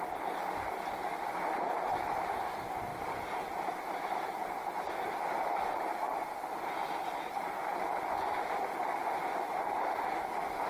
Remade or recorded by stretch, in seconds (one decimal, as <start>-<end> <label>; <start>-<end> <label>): 0.0-2.9 recorded; 2.9-7.3 remade; 7.3-9.2 recorded; 9.2-10.1 remade; 10.1-10.7 recorded